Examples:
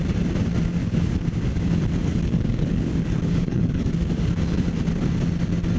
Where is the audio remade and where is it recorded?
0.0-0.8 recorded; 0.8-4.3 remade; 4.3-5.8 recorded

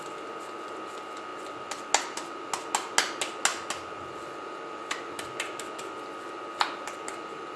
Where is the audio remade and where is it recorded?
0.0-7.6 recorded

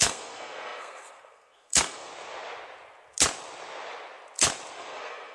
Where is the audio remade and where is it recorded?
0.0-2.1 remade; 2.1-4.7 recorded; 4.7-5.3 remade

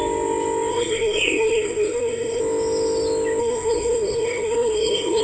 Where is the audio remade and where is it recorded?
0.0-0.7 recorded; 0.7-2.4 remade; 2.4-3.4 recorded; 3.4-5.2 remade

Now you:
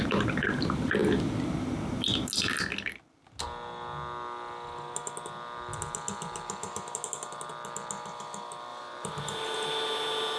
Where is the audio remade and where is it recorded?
0.0-8.7 recorded; 8.7-9.2 remade; 9.2-10.4 recorded

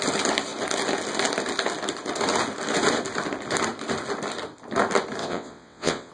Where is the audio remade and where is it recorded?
0.0-5.2 recorded; 5.2-6.1 remade